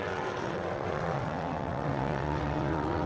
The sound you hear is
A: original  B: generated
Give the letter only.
B